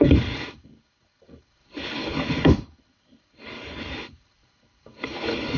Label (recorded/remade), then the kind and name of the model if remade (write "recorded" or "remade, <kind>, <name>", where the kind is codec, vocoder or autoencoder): remade, codec, HILCodec